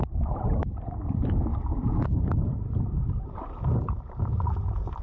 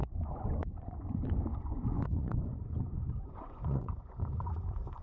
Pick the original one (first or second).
first